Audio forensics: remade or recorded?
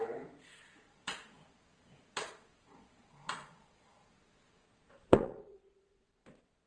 remade